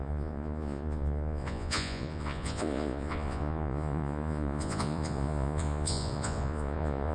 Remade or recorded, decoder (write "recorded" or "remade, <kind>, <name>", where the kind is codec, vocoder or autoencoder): remade, vocoder, Vocos